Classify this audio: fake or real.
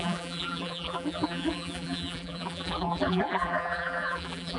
fake